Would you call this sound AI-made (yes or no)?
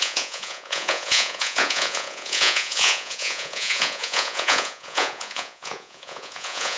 yes